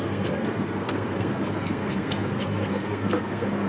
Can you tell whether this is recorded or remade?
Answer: remade